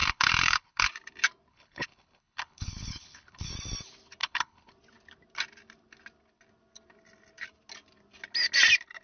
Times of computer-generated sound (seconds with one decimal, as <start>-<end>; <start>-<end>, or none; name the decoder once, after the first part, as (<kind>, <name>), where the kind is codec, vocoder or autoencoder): 0.0-0.9 (codec, HILCodec); 1.5-3.5; 4.2-4.7